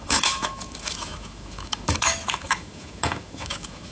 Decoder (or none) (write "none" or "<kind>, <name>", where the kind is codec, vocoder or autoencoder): autoencoder, DAC-VAE